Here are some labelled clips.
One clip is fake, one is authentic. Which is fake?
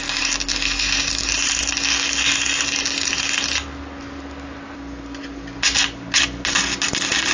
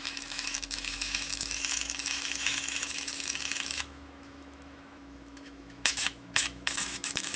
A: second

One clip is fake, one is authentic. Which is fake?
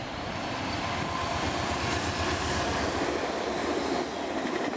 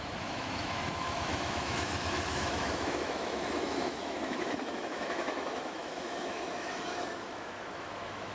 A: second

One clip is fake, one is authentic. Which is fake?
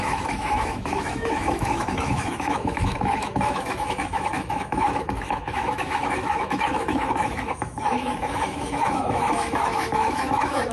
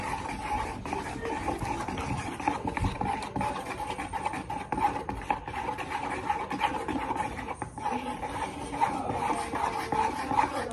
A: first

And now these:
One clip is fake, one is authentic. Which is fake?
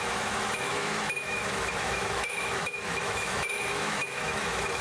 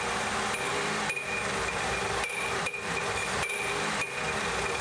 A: first